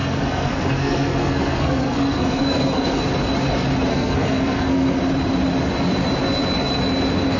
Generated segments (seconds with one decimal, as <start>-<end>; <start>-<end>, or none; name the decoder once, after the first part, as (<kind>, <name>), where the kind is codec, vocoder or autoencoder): 0.0-3.0 (codec, SNAC); 3.9-5.0